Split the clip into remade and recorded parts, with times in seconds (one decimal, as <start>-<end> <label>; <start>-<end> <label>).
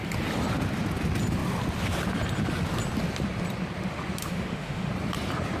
0.0-4.2 recorded; 4.2-4.9 remade; 4.9-5.6 recorded